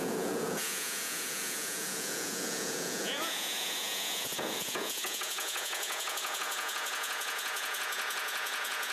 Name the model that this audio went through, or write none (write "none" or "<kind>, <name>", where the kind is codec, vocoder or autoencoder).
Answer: vocoder, Vocos